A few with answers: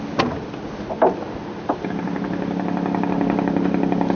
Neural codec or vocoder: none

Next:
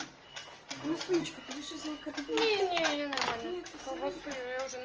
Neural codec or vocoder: none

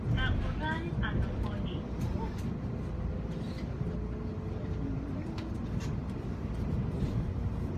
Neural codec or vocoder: none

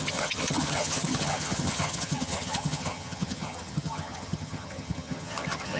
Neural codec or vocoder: vocoder, HiFi-GAN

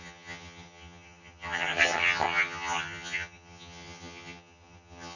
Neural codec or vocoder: vocoder, HiFi-GAN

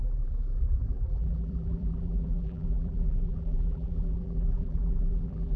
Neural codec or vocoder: vocoder, BigVGAN v2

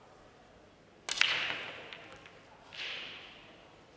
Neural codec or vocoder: none